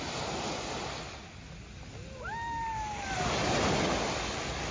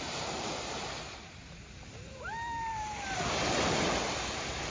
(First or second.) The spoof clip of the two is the second